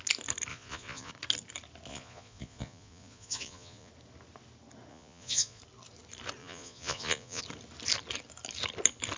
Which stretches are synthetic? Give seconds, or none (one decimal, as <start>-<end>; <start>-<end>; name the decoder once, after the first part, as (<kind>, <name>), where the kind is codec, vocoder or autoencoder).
0.5-1.1 (vocoder, Vocos); 1.9-3.9; 4.9-5.6; 6.4-7.4